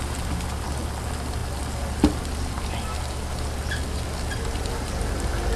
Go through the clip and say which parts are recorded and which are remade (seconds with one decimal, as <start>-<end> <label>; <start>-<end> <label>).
0.0-5.6 recorded